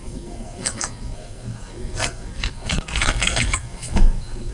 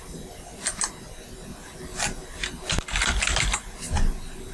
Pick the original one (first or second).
second